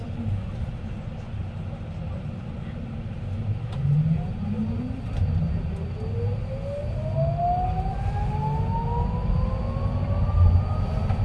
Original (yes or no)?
yes